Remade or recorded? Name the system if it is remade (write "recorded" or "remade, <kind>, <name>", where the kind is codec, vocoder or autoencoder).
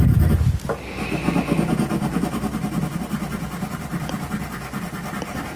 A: recorded